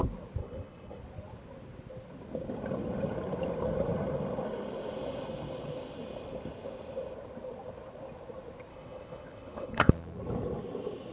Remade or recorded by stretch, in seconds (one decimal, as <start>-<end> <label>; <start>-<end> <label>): 0.0-0.4 recorded; 0.4-1.0 remade; 1.0-8.7 recorded; 8.7-9.9 remade; 9.9-11.1 recorded

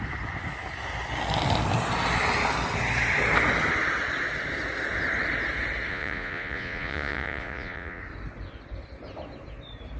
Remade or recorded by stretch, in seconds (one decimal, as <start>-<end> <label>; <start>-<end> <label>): 0.0-5.9 recorded; 5.9-8.0 remade; 8.0-10.0 recorded